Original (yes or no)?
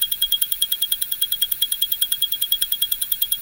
no